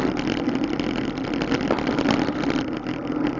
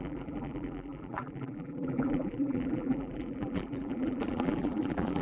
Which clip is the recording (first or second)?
first